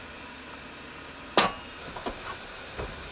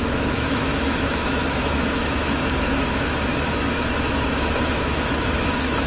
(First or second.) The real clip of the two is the first